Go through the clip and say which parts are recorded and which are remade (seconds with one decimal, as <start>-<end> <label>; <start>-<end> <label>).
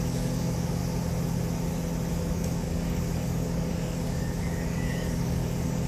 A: 0.0-0.8 remade; 0.8-2.3 recorded; 2.3-5.9 remade